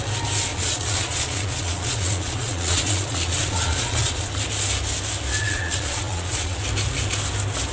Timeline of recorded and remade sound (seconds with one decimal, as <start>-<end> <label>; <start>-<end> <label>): 0.0-0.5 recorded; 0.5-4.3 remade; 4.3-5.4 recorded; 5.4-6.6 remade; 6.6-7.7 recorded